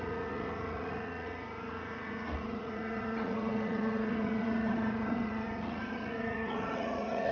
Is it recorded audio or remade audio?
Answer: remade